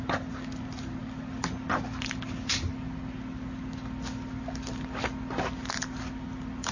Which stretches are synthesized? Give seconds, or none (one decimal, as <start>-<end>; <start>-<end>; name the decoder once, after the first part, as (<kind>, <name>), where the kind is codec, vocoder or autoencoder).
none